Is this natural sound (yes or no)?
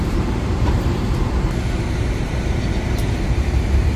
no